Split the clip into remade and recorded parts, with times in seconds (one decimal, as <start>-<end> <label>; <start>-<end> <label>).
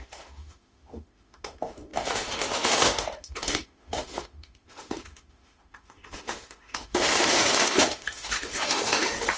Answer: 0.0-9.4 remade